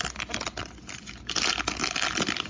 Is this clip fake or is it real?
real